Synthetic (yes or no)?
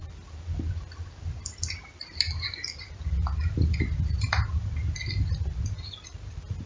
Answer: no